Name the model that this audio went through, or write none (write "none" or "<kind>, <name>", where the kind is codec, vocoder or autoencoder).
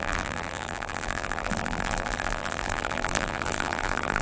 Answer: vocoder, BigVGAN v2